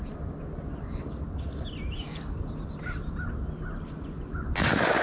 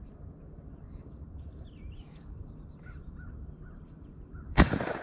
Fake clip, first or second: second